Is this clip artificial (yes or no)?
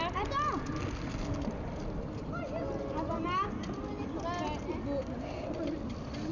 no